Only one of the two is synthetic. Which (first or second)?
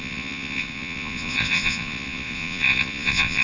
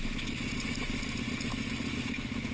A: first